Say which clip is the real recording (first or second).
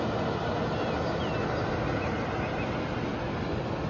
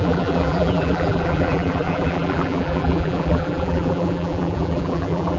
first